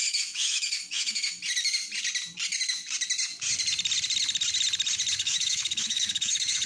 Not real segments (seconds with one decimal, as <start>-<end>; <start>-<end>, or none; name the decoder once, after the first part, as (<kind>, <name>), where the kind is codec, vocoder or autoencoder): 0.0-1.4 (autoencoder, DAC-VAE); 5.1-6.7